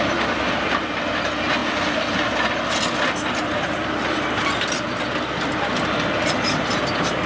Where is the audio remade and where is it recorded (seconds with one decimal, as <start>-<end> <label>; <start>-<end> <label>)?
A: 0.0-7.3 recorded